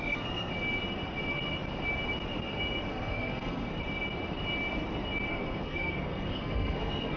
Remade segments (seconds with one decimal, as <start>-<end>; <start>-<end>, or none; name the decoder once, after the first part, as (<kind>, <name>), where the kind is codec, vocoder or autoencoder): 0.0-0.5 (codec, SNAC); 2.9-3.7; 5.3-7.2